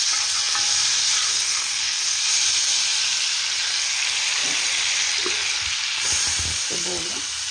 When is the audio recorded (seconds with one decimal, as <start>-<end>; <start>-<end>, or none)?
0.0-1.3; 2.2-7.5

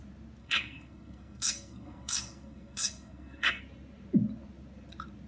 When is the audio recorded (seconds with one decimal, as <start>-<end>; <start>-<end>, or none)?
0.0-0.4; 3.6-5.3

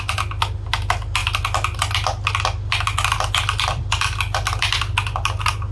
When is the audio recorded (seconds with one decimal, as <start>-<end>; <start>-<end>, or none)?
0.0-5.7

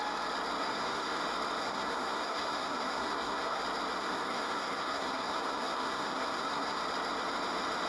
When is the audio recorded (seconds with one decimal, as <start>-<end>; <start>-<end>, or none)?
0.0-0.6; 1.2-1.6; 3.6-4.0; 6.8-7.9

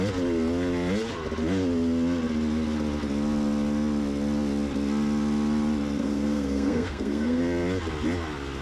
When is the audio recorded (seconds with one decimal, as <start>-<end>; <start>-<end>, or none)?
0.0-6.0; 7.4-8.6

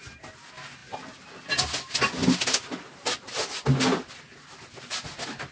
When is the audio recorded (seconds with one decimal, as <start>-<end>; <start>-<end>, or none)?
0.0-5.5